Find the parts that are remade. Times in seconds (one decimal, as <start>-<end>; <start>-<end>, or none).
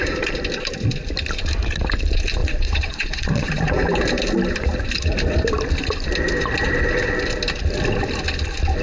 2.4-3.5